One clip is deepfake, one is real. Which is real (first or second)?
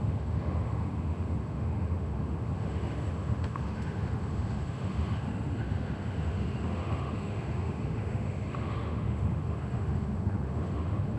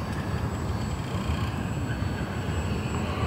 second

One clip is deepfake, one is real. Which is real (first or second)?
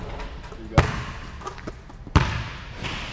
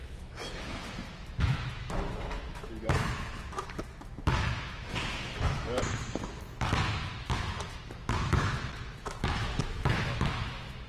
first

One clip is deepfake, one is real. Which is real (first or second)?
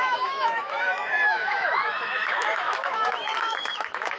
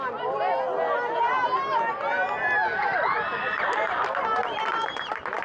second